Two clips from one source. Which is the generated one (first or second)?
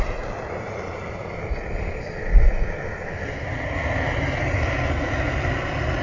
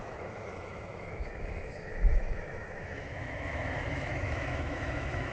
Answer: second